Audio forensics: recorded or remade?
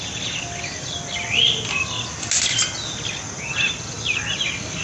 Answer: recorded